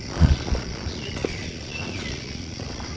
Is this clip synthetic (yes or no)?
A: yes